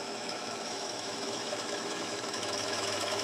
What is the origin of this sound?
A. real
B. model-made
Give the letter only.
B